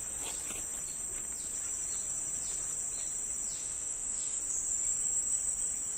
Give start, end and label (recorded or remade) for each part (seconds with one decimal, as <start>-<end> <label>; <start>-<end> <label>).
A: 0.0-3.6 recorded; 3.6-4.4 remade; 4.4-6.0 recorded